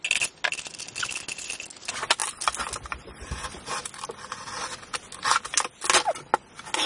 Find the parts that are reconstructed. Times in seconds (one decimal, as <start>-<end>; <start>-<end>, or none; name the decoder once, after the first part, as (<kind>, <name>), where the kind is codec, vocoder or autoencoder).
none